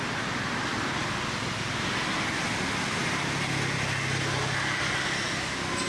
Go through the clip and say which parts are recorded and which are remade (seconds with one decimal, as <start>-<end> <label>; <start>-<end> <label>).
0.0-5.9 recorded